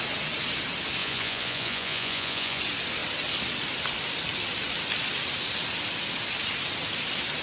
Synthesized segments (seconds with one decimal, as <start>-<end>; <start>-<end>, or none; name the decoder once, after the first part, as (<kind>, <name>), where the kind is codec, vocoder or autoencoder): 1.0-2.6 (vocoder, Vocos)